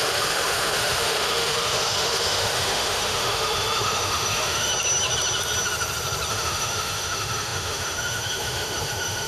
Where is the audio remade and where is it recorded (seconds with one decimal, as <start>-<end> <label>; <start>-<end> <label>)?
0.0-4.7 remade; 4.7-6.3 recorded; 6.3-9.3 remade